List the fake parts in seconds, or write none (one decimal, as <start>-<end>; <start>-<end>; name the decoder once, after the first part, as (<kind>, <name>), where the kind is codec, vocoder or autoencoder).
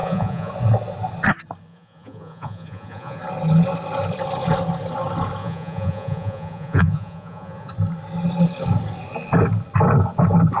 0.0-0.5 (vocoder, Vocos); 1.7-3.2; 5.4-7.7